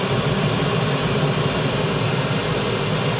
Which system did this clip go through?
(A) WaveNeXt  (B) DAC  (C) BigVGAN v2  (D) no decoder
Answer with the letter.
D